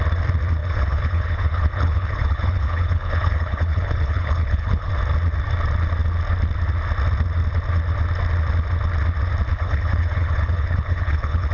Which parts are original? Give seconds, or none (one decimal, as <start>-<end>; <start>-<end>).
0.0-0.6; 4.9-9.5